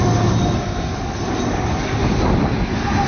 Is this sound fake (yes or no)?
no